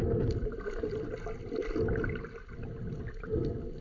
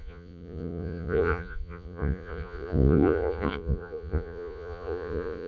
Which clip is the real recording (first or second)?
first